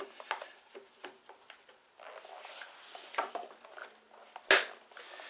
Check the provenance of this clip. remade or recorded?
recorded